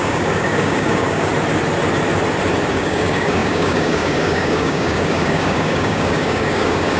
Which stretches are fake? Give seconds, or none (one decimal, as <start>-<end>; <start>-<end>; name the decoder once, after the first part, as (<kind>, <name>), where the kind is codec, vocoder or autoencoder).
0.0-1.3 (codec, DAC); 2.7-7.0

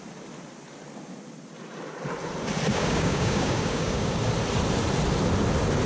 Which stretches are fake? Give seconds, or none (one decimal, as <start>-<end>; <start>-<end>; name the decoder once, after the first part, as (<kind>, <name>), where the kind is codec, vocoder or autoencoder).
2.7-4.2 (codec, DAC)

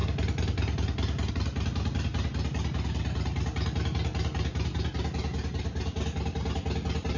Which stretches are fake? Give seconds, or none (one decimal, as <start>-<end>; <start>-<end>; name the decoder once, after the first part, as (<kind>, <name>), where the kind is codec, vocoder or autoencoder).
none

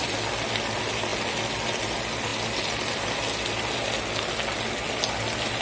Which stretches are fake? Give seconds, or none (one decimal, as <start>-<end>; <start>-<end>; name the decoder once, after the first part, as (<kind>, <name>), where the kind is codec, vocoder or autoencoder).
none

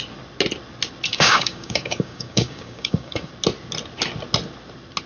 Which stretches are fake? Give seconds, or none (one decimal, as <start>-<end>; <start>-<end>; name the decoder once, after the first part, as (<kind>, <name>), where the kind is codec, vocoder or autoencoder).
1.1-3.3 (codec, DAC)

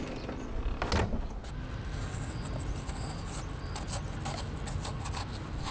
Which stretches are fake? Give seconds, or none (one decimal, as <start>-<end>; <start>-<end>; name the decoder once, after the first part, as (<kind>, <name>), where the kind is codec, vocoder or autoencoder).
none